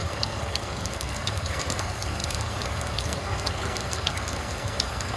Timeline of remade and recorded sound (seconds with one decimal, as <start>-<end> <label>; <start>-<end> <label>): 0.0-5.2 remade